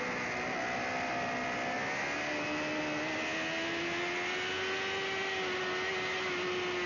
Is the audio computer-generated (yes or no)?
no